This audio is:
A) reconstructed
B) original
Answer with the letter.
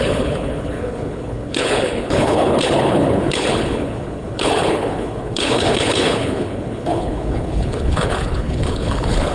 A